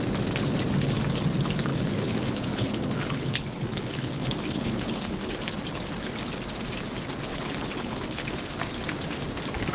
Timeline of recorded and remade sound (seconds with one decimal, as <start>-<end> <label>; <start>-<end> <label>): 0.0-1.7 recorded; 1.7-5.3 remade; 5.3-7.3 recorded; 7.3-8.6 remade; 8.6-9.7 recorded

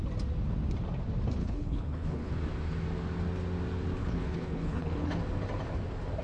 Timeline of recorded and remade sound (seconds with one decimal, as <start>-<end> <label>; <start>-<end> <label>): 0.0-1.4 recorded; 1.4-2.3 remade; 2.3-4.0 recorded; 4.0-5.2 remade; 5.2-6.2 recorded

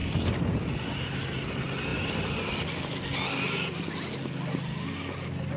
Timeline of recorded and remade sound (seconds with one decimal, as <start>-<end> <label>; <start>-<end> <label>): 0.0-5.6 recorded

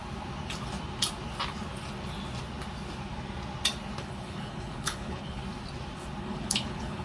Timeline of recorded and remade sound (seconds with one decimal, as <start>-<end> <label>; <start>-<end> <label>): 0.0-4.0 recorded; 4.0-5.4 remade; 5.4-6.2 recorded; 6.2-7.0 remade